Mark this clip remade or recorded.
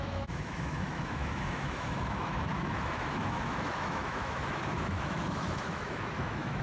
remade